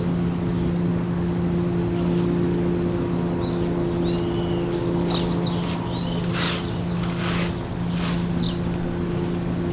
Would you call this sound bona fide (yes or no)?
yes